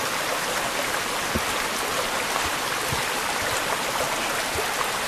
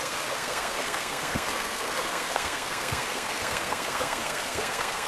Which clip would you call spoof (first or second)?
second